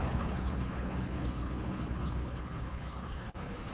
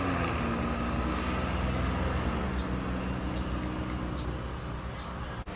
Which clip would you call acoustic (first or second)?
second